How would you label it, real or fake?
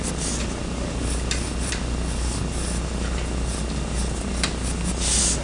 real